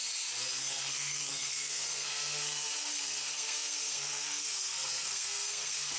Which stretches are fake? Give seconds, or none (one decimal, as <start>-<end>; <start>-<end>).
0.6-6.0